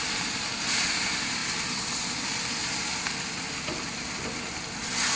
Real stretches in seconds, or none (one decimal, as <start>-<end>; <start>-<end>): 0.0-5.2